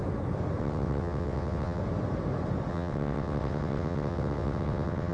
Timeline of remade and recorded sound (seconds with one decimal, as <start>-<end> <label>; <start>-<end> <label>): 0.0-0.6 recorded; 0.6-1.8 remade; 1.8-2.7 recorded; 2.7-5.1 remade